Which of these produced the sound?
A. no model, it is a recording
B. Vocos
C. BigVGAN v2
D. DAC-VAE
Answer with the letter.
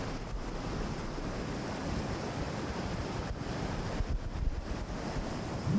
A